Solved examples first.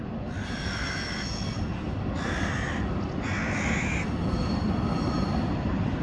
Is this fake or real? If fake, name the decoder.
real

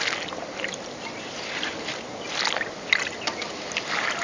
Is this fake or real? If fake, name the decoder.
real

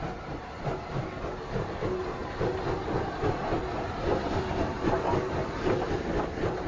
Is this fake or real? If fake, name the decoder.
real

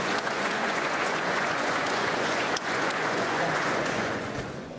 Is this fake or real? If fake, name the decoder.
fake, vocoder, Vocos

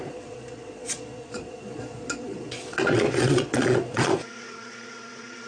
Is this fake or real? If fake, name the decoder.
fake, vocoder, Vocos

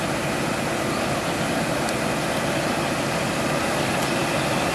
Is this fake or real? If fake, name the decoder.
real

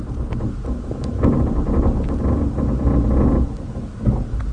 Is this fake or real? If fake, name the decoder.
real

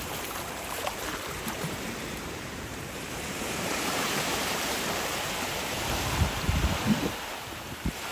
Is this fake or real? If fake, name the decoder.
fake, vocoder, BigVGAN v2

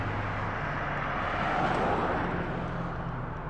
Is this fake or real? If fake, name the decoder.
real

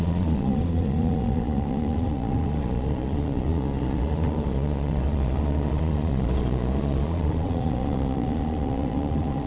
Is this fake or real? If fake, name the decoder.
fake, vocoder, Vocos